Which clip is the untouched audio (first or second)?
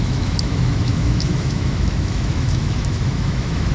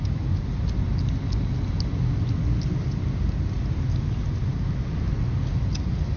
second